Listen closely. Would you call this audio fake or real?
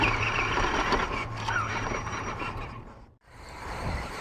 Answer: fake